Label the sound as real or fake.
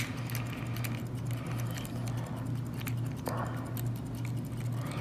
real